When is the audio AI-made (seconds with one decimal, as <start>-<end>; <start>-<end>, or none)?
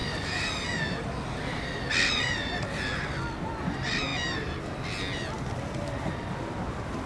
none